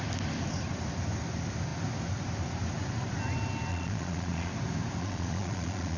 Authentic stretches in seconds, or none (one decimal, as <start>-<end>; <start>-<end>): 0.0-3.7; 4.5-5.0